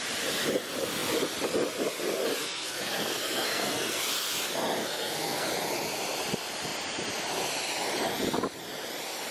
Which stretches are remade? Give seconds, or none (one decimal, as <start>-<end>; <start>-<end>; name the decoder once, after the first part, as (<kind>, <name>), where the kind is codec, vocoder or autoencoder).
2.4-4.1 (codec, SNAC); 4.8-5.5